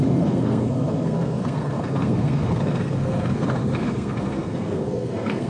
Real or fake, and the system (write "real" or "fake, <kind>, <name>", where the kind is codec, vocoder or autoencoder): fake, codec, SNAC